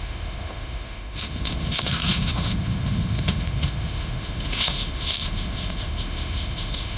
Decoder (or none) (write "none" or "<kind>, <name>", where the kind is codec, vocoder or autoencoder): autoencoder, DAC-VAE